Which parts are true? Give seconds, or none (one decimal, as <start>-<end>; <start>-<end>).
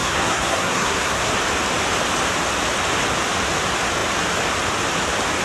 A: 1.3-5.4